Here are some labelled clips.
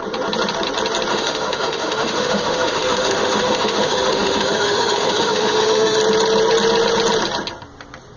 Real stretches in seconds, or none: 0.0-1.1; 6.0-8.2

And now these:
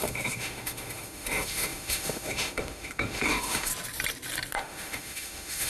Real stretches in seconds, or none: 3.7-4.6

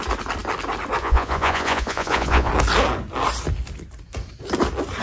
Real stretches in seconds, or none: 0.0-1.0; 2.5-5.0

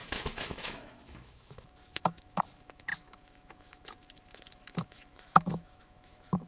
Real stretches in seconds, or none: none

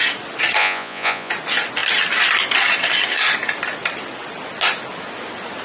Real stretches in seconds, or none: 0.0-0.6; 1.3-5.6